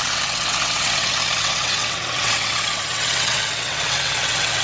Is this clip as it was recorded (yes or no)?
no